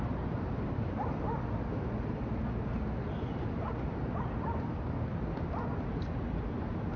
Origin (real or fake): real